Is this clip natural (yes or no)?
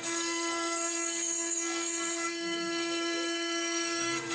no